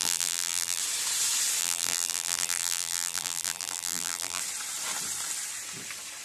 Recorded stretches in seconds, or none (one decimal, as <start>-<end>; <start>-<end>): 0.8-1.6; 4.4-6.2